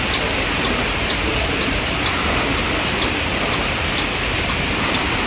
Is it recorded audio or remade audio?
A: recorded